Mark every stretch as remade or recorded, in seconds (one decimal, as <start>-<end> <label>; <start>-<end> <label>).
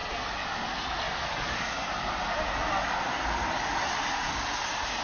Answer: 0.0-5.0 recorded